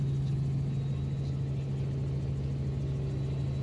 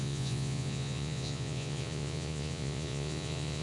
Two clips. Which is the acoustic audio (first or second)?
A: first